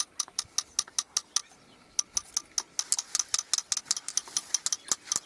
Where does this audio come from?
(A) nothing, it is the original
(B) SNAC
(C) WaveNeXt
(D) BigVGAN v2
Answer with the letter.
A